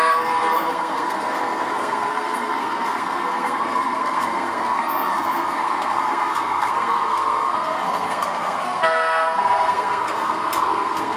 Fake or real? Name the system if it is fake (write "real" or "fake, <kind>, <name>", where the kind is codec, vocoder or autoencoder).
fake, codec, SNAC